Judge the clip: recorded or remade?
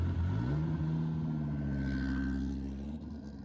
recorded